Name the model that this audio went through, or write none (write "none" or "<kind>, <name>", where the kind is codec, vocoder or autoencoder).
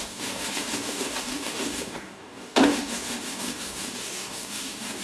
codec, DAC